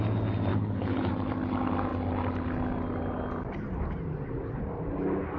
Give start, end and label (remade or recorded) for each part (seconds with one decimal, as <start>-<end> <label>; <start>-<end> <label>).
0.0-0.5 recorded; 0.5-1.1 remade; 1.1-5.4 recorded